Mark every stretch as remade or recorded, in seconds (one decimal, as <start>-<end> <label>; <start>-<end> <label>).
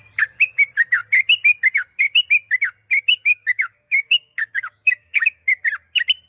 0.0-3.1 recorded; 3.1-5.6 remade; 5.6-6.3 recorded